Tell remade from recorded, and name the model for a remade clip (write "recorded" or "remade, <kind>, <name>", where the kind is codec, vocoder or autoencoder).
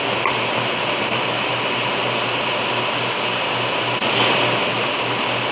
recorded